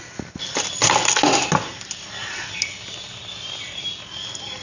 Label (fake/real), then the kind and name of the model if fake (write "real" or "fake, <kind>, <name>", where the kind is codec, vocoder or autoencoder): real